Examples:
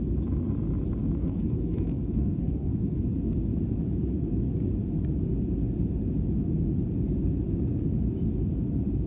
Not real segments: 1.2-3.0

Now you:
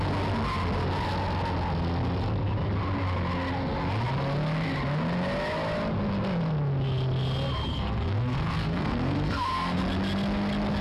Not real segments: 7.7-9.8

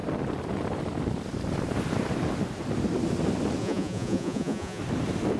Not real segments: 3.6-4.8

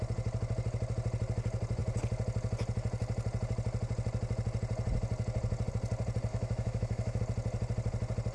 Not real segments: 6.3-7.2